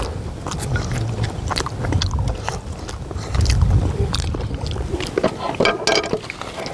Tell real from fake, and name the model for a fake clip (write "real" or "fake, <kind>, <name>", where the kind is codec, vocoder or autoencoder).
real